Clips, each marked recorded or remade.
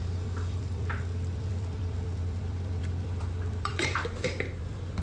remade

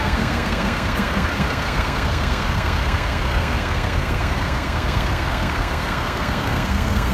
remade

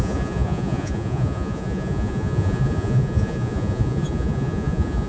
remade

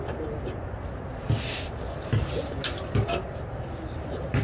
recorded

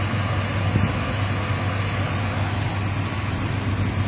recorded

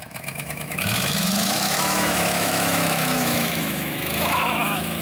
remade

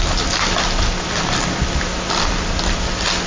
recorded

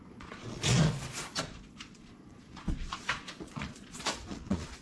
remade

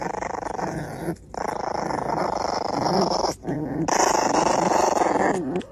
recorded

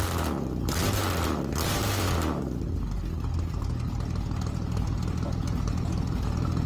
recorded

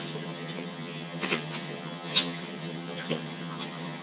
remade